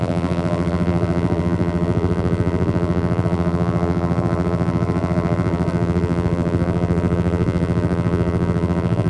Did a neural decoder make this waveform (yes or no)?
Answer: yes